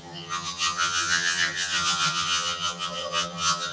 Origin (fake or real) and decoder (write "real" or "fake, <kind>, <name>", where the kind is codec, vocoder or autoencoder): fake, vocoder, HiFi-GAN